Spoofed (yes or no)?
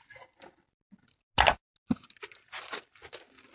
no